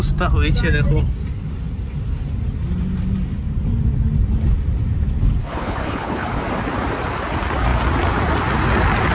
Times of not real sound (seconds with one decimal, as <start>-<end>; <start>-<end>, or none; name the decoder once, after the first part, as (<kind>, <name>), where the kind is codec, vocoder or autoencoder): 5.4-6.4 (codec, HILCodec)